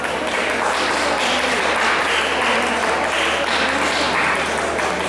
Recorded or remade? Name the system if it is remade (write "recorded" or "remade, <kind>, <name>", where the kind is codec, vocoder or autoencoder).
recorded